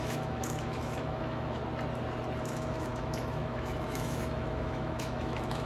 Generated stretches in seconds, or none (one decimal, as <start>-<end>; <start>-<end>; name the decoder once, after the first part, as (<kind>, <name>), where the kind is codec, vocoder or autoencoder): 0.0-1.6 (autoencoder, DAC-VAE); 2.4-5.7